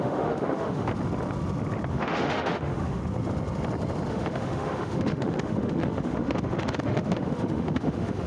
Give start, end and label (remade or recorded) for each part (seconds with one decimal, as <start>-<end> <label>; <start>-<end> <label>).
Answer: 0.0-0.9 remade; 0.9-1.9 recorded; 1.9-3.0 remade; 3.0-4.1 recorded; 4.1-8.3 remade